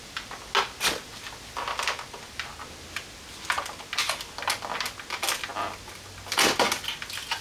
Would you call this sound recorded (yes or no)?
yes